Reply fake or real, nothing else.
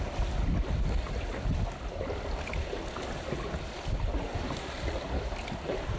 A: real